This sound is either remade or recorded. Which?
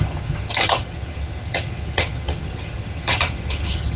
remade